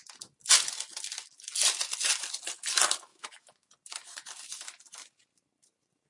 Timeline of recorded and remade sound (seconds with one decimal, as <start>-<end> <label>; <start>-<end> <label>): 0.0-3.1 recorded; 3.1-3.7 remade; 3.7-6.1 recorded

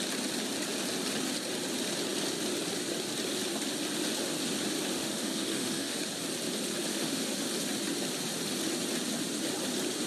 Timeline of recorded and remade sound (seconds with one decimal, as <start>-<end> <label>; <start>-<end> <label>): 0.0-4.9 recorded; 4.9-6.0 remade; 6.0-6.9 recorded; 6.9-7.4 remade; 7.4-10.1 recorded

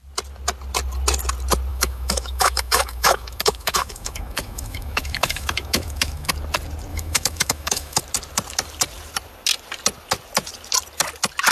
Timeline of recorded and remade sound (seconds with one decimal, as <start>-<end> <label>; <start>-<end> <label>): 0.0-1.7 recorded; 1.7-6.3 remade; 6.3-6.9 recorded; 6.9-8.0 remade; 8.0-11.5 recorded

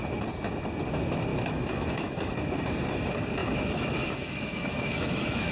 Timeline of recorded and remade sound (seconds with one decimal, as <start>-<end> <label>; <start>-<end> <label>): 0.0-1.3 recorded; 1.3-2.3 remade; 2.3-3.4 recorded; 3.4-5.5 remade

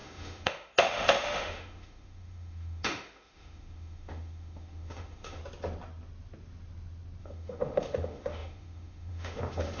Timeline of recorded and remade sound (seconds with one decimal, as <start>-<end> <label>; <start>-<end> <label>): 0.0-5.4 remade; 5.4-7.2 recorded; 7.2-9.8 remade

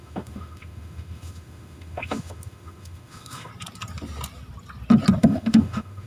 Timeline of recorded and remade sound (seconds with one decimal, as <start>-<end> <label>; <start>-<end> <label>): 0.0-3.5 remade; 3.5-5.2 recorded; 5.2-6.1 remade

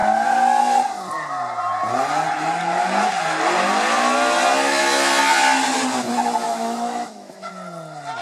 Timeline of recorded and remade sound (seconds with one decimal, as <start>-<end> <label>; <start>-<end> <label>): 0.0-6.4 recorded; 6.4-7.5 remade; 7.5-8.2 recorded